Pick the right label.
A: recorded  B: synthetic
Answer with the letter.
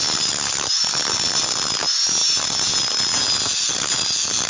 A